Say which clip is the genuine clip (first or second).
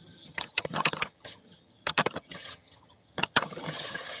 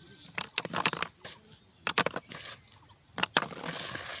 second